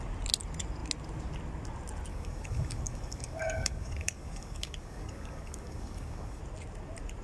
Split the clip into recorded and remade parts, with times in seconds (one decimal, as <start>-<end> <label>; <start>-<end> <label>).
0.0-2.1 recorded; 2.1-6.4 remade; 6.4-7.2 recorded